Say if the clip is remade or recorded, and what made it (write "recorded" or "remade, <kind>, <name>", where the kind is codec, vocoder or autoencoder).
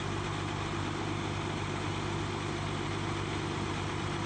recorded